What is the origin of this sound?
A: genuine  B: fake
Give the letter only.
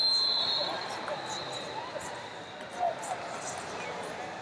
B